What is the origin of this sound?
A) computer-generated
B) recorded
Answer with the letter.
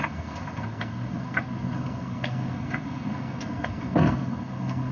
A